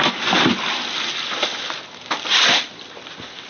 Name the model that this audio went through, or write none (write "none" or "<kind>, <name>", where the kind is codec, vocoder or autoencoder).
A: none